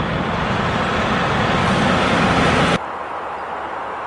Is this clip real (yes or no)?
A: yes